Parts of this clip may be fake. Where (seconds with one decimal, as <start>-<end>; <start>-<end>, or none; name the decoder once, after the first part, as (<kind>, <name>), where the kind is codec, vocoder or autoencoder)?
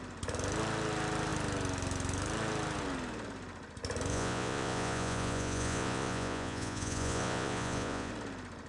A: 4.1-8.1 (vocoder, Vocos)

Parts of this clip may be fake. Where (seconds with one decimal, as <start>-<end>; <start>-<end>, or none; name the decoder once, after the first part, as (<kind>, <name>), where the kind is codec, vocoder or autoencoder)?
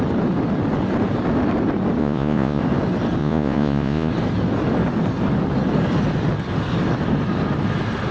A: 2.0-2.6 (vocoder, Vocos); 3.2-4.1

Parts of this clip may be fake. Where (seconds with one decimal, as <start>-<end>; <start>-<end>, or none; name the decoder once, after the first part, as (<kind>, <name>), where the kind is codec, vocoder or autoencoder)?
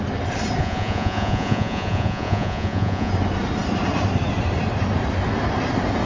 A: 0.6-3.1 (vocoder, Vocos)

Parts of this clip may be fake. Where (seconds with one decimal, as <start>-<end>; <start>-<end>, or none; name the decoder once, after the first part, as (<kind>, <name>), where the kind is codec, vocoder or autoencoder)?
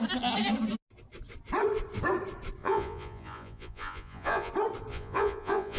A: 2.6-4.5 (vocoder, Vocos); 4.9-5.8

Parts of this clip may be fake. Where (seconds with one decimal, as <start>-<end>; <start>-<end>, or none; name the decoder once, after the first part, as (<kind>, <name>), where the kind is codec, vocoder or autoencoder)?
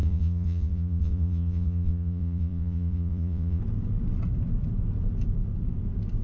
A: 0.0-3.6 (vocoder, Vocos)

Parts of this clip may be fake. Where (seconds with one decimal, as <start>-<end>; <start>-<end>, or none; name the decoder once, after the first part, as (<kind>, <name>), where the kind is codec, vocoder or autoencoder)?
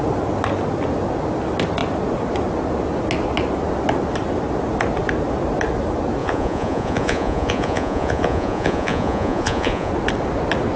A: 6.2-9.9 (vocoder, Vocos)